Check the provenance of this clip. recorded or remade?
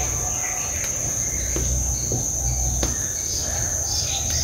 recorded